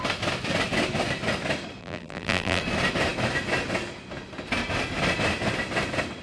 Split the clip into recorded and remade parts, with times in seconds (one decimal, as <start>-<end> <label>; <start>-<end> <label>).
0.0-1.8 recorded; 1.8-2.6 remade; 2.6-6.2 recorded

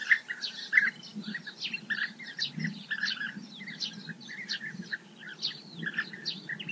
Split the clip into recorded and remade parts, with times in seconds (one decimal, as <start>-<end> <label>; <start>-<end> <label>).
0.0-6.7 recorded